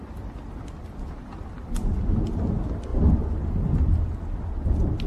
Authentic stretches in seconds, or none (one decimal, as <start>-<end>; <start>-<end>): 0.0-5.1